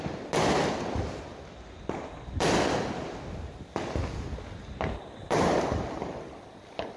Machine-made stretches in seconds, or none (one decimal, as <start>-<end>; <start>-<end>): none